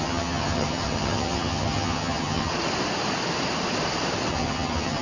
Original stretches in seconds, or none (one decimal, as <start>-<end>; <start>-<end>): 2.5-4.3